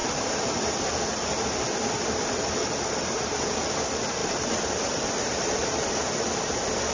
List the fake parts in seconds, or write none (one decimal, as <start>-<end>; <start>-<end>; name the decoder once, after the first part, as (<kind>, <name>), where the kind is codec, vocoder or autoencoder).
0.0-3.3 (vocoder, BigVGAN v2); 4.2-5.9

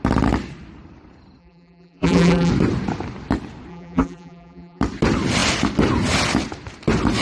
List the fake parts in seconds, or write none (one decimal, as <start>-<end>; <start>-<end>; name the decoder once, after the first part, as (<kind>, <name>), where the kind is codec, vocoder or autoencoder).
1.4-2.5 (vocoder, BigVGAN v2); 3.7-4.8

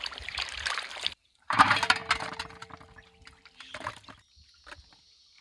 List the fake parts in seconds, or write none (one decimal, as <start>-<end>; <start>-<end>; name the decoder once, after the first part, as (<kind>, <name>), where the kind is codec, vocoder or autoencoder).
0.0-2.0 (vocoder, BigVGAN v2)

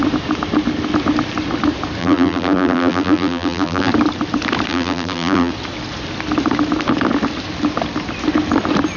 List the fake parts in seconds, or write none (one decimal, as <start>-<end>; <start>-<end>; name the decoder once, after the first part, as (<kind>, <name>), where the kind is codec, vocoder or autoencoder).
2.0-3.9 (vocoder, BigVGAN v2); 4.7-5.5

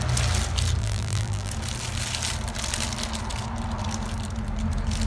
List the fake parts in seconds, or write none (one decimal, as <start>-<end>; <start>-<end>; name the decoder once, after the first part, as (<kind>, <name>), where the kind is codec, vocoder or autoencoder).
0.8-1.5 (vocoder, BigVGAN v2)